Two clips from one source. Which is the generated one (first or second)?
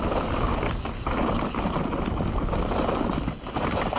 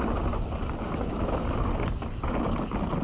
first